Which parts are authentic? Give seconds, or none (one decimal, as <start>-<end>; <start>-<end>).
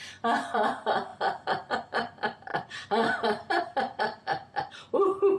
none